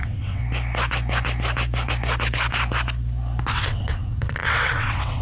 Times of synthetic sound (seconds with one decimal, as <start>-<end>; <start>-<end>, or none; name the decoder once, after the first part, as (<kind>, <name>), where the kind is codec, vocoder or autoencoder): 0.0-0.4 (vocoder, WaveNeXt); 3.5-5.2